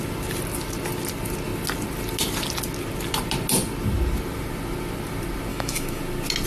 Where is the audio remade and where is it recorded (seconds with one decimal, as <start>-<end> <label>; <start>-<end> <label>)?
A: 0.0-5.5 recorded; 5.5-6.0 remade; 6.0-6.5 recorded